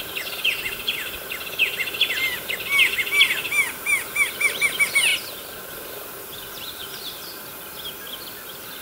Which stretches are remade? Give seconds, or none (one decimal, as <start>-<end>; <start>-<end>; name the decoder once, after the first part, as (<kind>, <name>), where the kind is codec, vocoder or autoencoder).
5.1-5.7 (vocoder, BigVGAN v2); 6.8-7.4

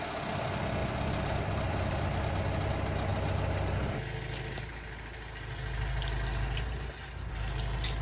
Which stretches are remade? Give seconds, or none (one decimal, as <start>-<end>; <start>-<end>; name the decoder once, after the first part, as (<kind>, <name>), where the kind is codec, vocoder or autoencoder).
0.8-2.3 (vocoder, BigVGAN v2)